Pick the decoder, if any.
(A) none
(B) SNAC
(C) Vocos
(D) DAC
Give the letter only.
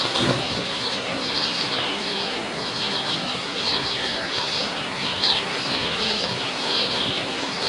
B